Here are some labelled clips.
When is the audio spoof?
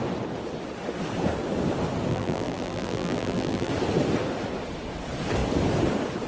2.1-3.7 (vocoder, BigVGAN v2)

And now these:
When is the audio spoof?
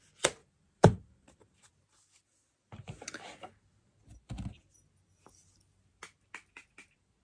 0.4-1.7 (vocoder, BigVGAN v2)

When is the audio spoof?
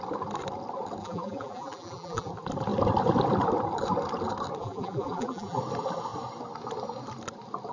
1.0-2.3 (vocoder, BigVGAN v2); 4.6-5.6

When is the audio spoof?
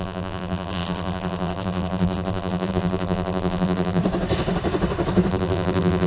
0.0-4.0 (vocoder, BigVGAN v2); 5.3-6.1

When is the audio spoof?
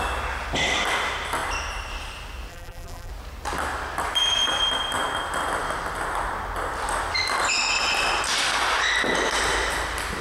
2.5-3.1 (vocoder, BigVGAN v2)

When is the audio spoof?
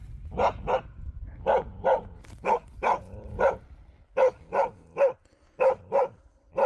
0.0-1.2 (vocoder, BigVGAN v2); 5.2-6.7